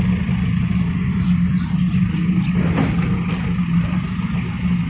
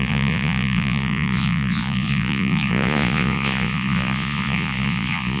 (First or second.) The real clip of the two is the first